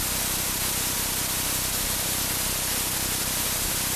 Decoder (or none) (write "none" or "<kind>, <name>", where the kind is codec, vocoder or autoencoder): none